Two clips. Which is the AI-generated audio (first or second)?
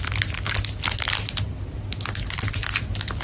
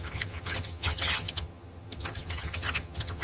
second